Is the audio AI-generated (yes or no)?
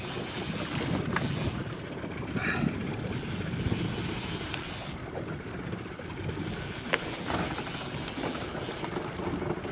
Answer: no